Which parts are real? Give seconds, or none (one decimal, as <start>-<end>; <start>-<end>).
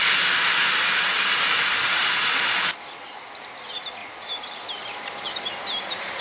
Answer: 0.0-6.2